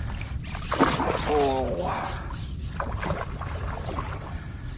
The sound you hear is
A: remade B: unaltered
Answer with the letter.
B